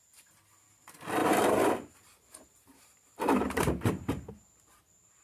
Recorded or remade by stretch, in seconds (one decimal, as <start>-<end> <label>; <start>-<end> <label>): 0.0-1.2 recorded; 1.2-4.3 remade; 4.3-5.2 recorded